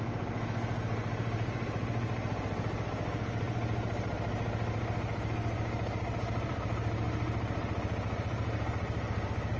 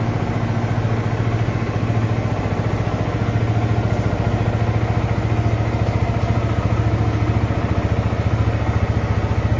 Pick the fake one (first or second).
first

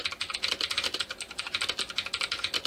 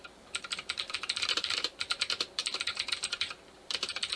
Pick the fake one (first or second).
second